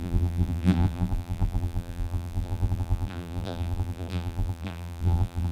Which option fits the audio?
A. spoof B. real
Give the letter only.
A